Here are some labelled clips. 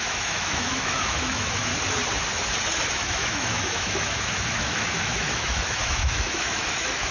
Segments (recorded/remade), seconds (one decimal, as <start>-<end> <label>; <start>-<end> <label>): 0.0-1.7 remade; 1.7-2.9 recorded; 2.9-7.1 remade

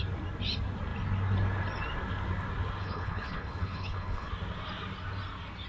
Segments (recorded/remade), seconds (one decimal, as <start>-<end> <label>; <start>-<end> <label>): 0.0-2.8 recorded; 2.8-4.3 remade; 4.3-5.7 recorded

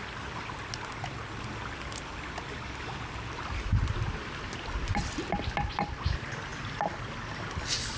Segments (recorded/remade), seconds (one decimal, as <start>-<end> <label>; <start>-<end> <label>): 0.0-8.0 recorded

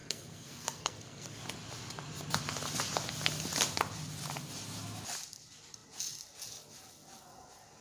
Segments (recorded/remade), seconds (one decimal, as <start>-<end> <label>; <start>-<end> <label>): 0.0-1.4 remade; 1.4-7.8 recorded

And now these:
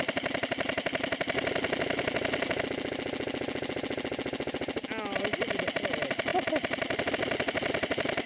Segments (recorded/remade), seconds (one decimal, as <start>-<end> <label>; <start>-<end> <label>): 0.0-8.3 recorded